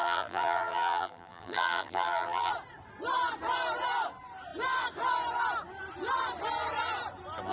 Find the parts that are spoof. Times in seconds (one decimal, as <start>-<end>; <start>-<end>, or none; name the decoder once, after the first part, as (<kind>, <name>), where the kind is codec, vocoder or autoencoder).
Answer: 0.0-2.5 (vocoder, BigVGAN v2)